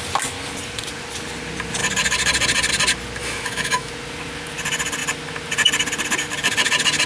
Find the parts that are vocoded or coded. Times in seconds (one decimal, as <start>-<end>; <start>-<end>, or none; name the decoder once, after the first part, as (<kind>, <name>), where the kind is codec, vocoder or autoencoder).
3.2-3.9 (autoencoder, DAC-VAE)